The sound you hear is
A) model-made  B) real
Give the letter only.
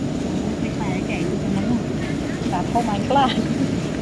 B